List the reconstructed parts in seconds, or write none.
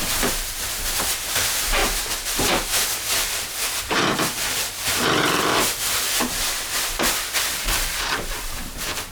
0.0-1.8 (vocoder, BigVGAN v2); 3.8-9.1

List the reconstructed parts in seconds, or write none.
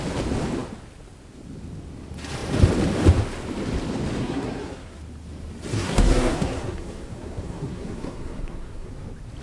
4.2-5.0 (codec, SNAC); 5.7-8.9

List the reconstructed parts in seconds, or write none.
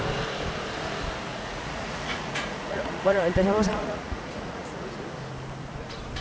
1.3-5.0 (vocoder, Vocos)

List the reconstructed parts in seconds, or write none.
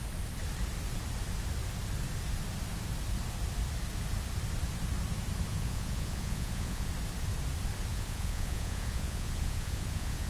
5.5-6.9 (vocoder, Vocos); 7.9-10.3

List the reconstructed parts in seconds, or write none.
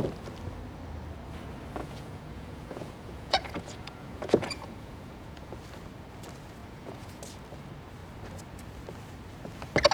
1.8-5.6 (vocoder, Vocos); 6.6-7.2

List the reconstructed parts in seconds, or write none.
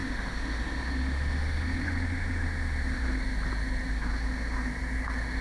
0.0-3.2 (autoencoder, DAC-VAE); 3.9-4.7